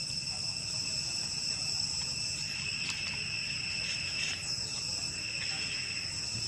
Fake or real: real